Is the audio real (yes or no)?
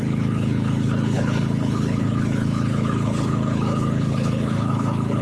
no